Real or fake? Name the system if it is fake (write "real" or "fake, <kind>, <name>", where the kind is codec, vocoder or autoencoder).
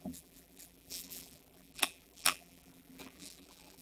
fake, vocoder, BigVGAN v2